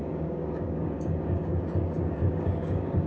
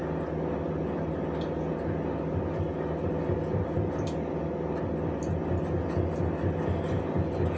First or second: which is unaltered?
second